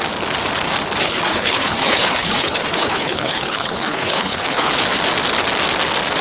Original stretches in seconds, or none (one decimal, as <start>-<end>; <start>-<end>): 0.0-1.0; 4.7-6.2